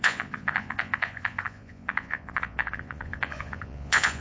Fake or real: fake